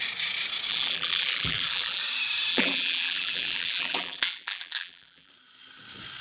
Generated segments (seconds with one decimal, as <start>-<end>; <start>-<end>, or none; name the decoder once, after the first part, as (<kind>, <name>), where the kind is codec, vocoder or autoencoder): 0.7-2.0 (vocoder, BigVGAN v2); 2.5-5.3

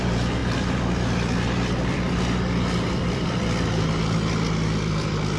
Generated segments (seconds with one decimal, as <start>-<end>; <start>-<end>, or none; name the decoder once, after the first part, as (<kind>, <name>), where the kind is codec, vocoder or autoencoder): 0.0-5.4 (vocoder, BigVGAN v2)

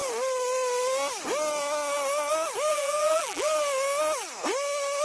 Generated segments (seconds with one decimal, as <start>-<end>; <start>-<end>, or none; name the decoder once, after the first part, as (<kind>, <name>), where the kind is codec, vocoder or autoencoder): 2.7-3.5 (vocoder, BigVGAN v2)